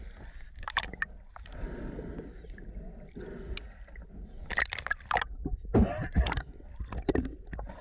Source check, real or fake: real